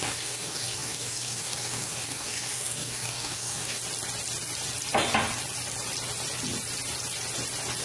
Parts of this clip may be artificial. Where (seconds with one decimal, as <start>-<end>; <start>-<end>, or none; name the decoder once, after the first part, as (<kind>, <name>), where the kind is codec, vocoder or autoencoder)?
0.0-3.8 (codec, DAC)